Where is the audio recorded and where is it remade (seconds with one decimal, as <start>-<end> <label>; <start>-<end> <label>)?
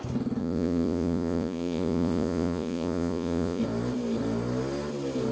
0.0-0.4 recorded; 0.4-3.6 remade; 3.6-5.3 recorded